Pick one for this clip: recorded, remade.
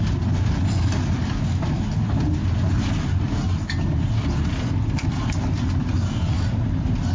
recorded